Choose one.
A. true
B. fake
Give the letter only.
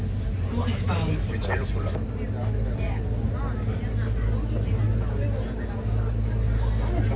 A